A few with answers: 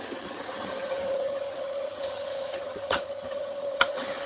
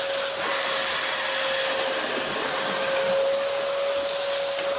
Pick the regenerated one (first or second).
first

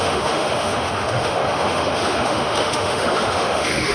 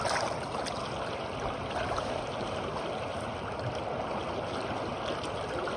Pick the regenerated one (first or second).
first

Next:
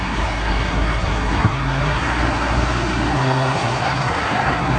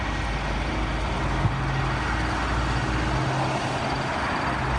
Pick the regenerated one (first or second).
first